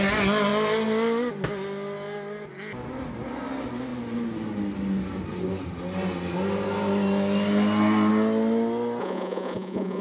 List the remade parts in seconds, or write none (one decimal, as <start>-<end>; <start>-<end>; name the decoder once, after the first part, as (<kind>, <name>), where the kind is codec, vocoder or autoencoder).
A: 9.0-10.0 (vocoder, Vocos)